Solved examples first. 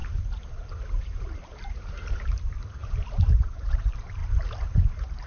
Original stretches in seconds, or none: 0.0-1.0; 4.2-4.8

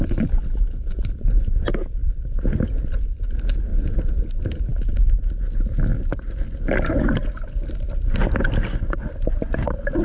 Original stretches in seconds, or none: 0.0-3.7; 4.2-7.6; 8.2-10.0

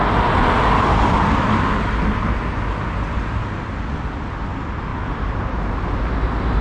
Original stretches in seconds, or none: 0.0-4.9; 6.0-6.6

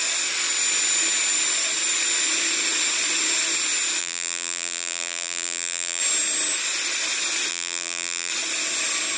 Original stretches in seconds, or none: 0.0-4.0; 6.0-7.5; 8.3-9.2

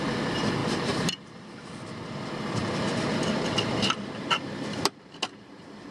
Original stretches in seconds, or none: 0.0-0.6; 2.2-2.6; 4.4-5.9

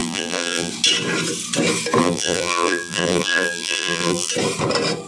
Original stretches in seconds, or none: 0.7-2.0; 4.3-5.1

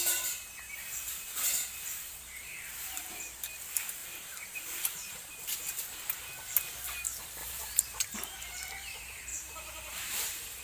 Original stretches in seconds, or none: 0.0-4.0; 5.3-7.4; 8.0-9.3

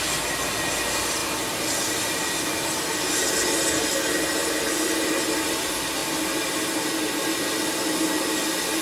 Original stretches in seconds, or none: 0.0-4.4; 5.1-8.8